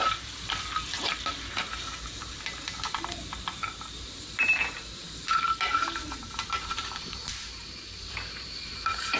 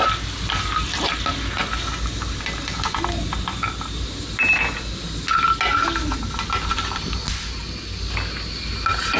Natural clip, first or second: second